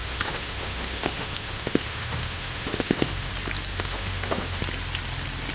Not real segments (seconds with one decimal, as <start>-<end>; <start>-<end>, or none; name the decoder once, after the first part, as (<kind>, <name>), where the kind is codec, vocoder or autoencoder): 0.0-3.3 (autoencoder, DAC-VAE); 3.7-4.6